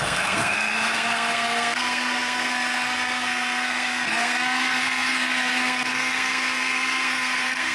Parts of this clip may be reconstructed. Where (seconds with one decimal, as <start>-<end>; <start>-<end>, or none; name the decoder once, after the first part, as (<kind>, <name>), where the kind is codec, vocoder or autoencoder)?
0.0-7.7 (codec, SNAC)